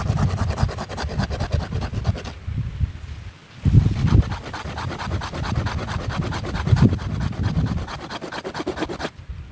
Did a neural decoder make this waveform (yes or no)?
no